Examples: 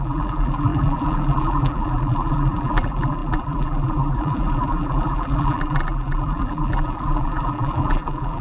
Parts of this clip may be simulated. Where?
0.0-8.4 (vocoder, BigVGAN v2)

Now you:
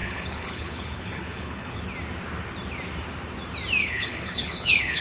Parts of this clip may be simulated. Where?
0.0-1.8 (codec, HILCodec); 3.8-5.0

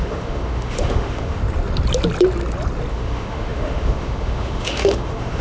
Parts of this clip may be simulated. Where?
0.0-1.4 (autoencoder, DAC-VAE); 2.9-5.4

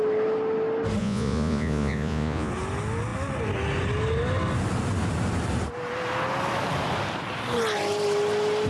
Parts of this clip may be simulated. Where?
1.0-2.5 (vocoder, Vocos)

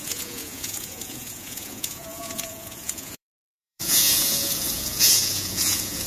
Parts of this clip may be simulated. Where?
0.0-6.1 (vocoder, Vocos)